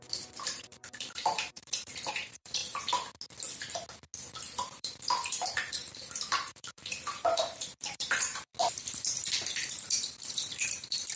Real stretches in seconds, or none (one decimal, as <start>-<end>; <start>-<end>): 2.6-4.8; 8.5-9.7